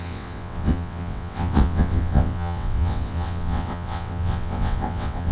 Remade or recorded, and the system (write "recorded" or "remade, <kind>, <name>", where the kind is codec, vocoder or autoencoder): remade, vocoder, WaveNeXt